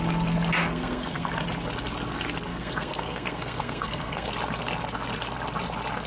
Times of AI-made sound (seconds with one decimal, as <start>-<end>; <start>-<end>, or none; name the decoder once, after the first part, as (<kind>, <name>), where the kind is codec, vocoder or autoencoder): 0.6-1.3 (codec, SNAC); 2.5-4.3